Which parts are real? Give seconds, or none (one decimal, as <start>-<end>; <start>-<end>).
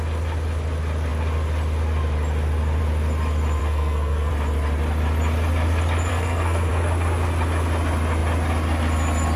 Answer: 0.0-3.6; 4.3-6.1; 6.7-9.4